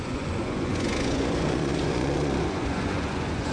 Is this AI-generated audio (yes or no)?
yes